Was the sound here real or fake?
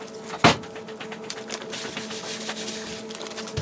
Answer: real